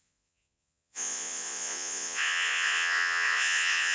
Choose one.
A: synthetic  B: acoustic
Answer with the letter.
A